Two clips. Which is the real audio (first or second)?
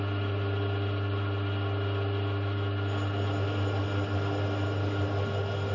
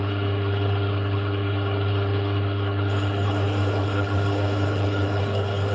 first